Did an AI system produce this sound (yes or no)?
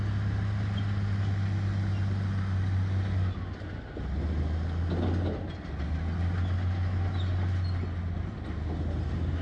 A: no